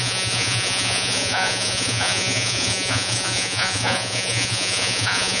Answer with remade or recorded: remade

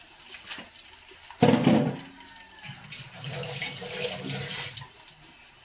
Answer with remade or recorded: recorded